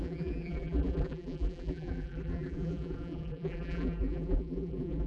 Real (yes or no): no